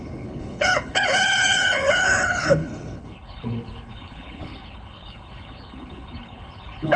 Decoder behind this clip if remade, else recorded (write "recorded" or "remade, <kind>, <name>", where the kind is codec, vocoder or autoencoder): remade, codec, HILCodec